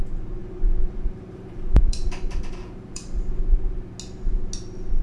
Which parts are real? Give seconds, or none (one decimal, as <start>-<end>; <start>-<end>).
0.0-0.4; 3.4-5.0